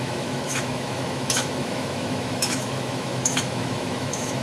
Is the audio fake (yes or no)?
yes